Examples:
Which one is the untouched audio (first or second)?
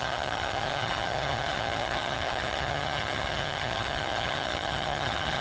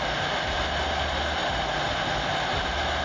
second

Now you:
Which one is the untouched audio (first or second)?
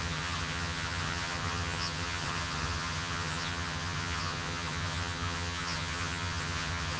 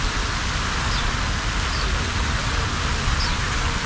second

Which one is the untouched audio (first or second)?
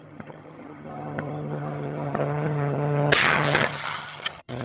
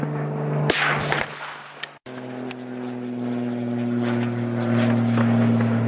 second